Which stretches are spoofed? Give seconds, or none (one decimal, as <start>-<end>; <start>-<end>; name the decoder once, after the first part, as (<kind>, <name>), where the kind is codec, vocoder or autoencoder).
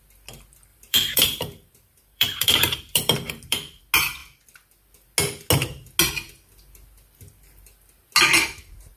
0.7-3.8 (vocoder, BigVGAN v2)